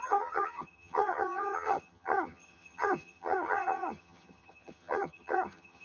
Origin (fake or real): fake